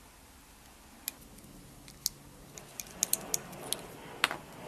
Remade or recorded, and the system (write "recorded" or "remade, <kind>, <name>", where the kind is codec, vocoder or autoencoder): recorded